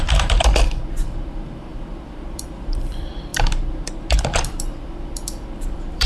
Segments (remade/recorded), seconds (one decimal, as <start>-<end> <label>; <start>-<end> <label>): 0.0-6.1 remade